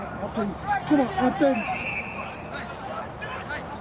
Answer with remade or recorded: recorded